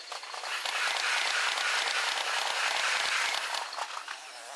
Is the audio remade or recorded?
recorded